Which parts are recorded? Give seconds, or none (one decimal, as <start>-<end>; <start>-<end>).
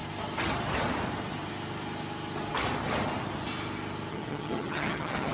0.0-4.1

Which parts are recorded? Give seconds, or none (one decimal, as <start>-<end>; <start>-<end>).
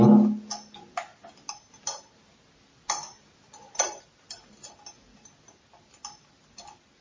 0.0-7.0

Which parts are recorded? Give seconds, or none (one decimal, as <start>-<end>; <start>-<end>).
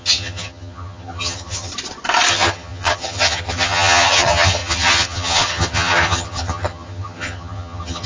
1.7-2.3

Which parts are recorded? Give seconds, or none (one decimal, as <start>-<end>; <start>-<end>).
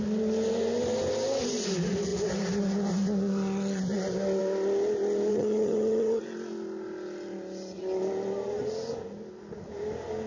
0.0-5.3; 6.2-10.3